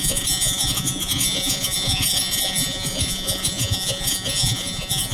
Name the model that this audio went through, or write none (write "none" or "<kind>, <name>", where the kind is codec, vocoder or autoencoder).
vocoder, Vocos